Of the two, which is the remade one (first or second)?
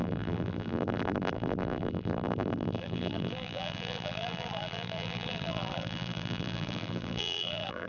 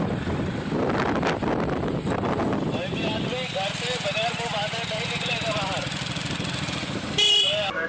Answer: first